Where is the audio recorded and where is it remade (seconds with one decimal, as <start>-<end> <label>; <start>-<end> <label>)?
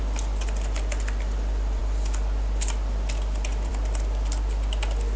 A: 0.0-5.2 recorded